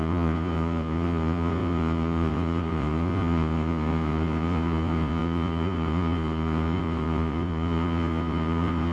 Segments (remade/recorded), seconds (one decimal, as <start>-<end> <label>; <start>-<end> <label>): 0.0-8.9 remade